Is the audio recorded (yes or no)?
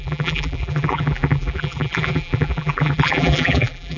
no